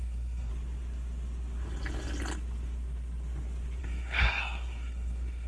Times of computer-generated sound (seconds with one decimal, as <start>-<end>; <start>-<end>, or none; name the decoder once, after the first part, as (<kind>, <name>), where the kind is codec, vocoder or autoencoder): 0.0-0.5 (codec, SNAC); 3.8-5.5